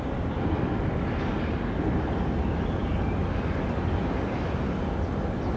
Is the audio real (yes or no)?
yes